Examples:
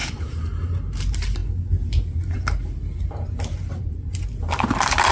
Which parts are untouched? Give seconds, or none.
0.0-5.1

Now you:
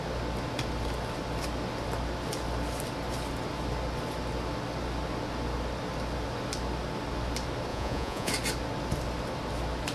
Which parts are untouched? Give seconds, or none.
0.0-7.7; 8.3-9.9

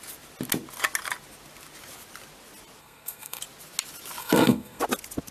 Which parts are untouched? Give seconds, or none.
0.0-2.8; 3.4-4.2; 4.8-5.3

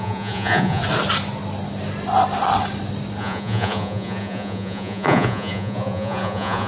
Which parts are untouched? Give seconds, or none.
0.8-3.2

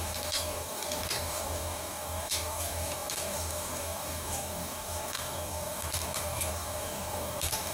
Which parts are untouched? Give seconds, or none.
none

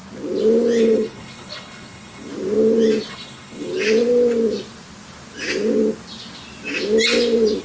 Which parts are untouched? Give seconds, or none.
0.0-0.8; 2.3-3.1; 3.7-7.6